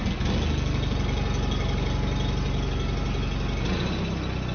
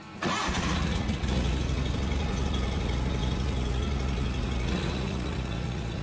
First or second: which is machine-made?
second